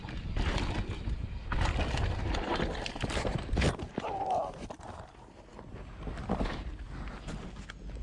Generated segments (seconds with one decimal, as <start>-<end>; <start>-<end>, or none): none